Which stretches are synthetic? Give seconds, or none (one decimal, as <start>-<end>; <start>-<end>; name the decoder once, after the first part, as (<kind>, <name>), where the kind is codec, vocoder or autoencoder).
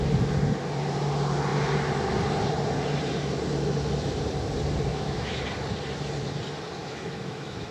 4.9-5.4 (autoencoder, DAC-VAE); 6.8-7.7